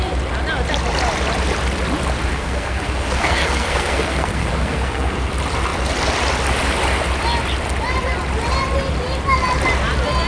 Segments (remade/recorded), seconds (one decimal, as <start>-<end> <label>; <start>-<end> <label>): 0.0-2.3 recorded; 2.3-5.3 remade; 5.3-10.3 recorded